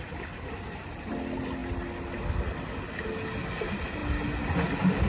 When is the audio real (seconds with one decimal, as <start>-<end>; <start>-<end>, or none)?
0.0-5.1